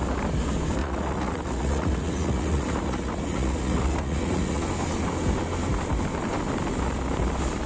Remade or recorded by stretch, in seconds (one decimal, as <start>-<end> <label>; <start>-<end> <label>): 0.0-0.8 recorded; 0.8-4.6 remade; 4.6-7.7 recorded